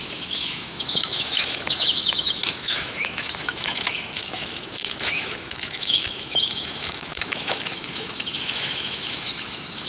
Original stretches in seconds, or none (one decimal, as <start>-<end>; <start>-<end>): none